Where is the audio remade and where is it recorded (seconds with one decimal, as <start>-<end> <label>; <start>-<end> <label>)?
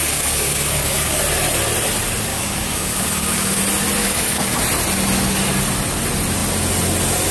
0.0-1.2 remade; 1.2-2.3 recorded; 2.3-3.6 remade; 3.6-4.0 recorded; 4.0-4.6 remade; 4.6-7.3 recorded